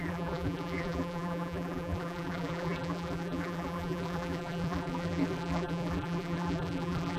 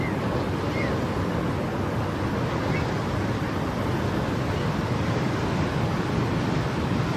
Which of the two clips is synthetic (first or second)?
first